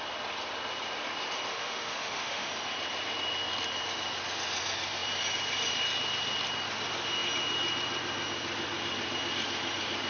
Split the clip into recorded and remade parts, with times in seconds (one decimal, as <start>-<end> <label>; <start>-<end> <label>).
0.0-1.5 recorded; 1.5-2.5 remade; 2.5-10.1 recorded